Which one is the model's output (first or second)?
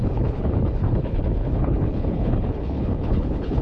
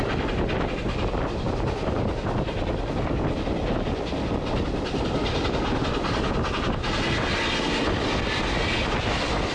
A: first